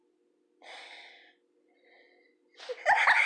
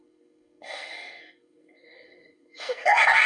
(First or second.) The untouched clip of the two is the first